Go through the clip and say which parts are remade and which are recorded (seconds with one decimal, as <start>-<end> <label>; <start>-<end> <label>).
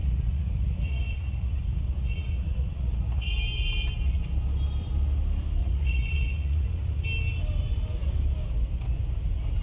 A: 0.0-3.3 remade; 3.3-5.6 recorded; 5.6-7.0 remade; 7.0-9.6 recorded